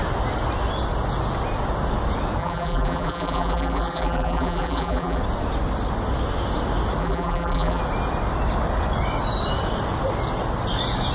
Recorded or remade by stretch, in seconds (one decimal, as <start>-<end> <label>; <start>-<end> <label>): 0.0-2.4 recorded; 2.4-5.2 remade; 5.2-7.0 recorded; 7.0-7.8 remade; 7.8-11.1 recorded